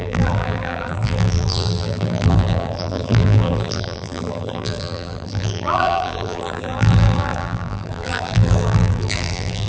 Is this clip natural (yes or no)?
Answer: no